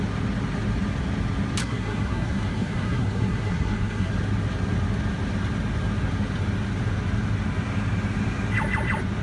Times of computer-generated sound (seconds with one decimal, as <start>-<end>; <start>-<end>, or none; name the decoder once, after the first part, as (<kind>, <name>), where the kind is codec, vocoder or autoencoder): 1.6-4.1 (codec, SNAC)